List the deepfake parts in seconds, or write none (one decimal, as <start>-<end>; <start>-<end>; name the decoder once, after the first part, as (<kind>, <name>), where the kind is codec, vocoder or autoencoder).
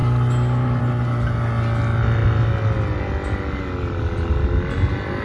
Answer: 0.0-0.8 (vocoder, BigVGAN v2)